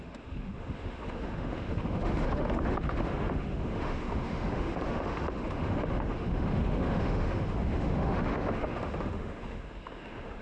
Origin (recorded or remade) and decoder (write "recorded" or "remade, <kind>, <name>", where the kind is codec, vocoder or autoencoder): remade, autoencoder, DAC-VAE